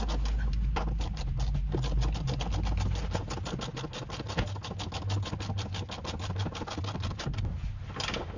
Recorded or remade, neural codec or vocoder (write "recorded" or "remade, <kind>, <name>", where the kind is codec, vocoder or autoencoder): recorded